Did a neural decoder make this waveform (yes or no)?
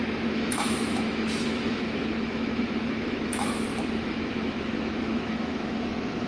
yes